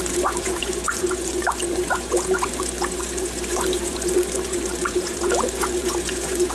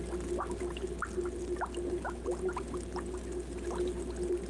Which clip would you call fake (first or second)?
first